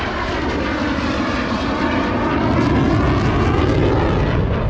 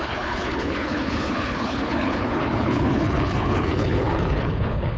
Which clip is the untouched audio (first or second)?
first